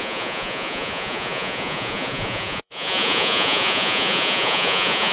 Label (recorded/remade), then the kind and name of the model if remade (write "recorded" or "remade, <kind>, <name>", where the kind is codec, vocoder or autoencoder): remade, vocoder, Vocos